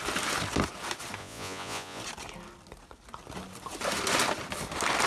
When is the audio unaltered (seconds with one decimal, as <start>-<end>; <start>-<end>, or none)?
0.0-1.2; 2.0-5.1

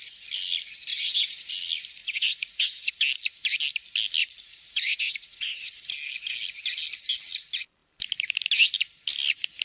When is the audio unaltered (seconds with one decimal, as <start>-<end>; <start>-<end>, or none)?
0.0-0.9; 1.5-2.0; 2.9-4.2; 5.7-9.6

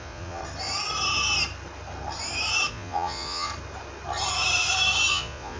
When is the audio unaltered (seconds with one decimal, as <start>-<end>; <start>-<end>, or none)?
0.4-2.7; 3.5-5.1

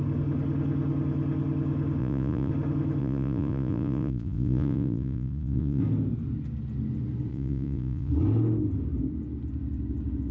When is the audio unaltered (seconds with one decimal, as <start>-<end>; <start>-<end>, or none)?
0.0-2.0; 2.5-3.0; 5.8-7.3; 8.1-10.3

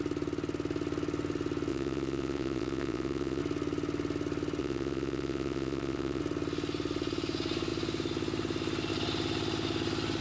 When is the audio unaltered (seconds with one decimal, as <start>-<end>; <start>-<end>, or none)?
0.0-1.7; 3.4-4.6; 6.2-10.2

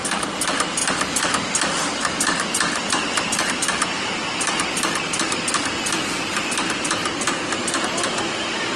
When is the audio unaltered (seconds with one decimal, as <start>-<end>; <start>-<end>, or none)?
0.0-8.8